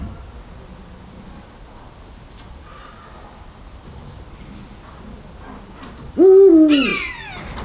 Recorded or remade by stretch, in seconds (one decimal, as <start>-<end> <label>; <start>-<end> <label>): 0.0-7.6 recorded